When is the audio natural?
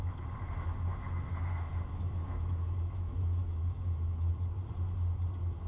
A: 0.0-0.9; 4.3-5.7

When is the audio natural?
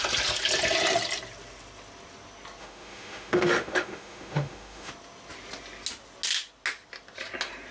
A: 0.0-2.6; 4.9-7.7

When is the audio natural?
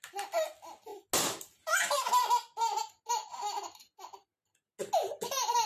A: 0.0-5.7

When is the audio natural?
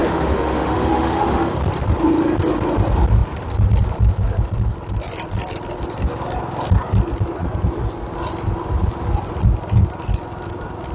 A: 1.4-10.9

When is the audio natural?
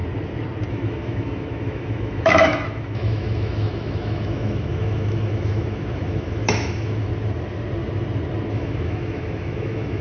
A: 0.0-0.7; 7.1-8.5